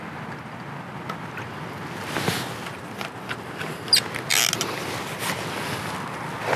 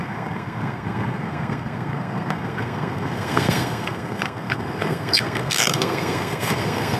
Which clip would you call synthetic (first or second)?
second